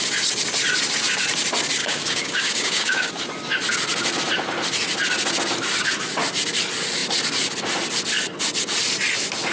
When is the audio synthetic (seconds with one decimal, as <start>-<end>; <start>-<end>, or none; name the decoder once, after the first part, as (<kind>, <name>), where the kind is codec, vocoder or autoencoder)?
1.8-3.1 (codec, DAC)